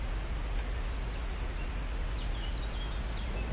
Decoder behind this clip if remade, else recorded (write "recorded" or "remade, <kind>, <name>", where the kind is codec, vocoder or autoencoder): recorded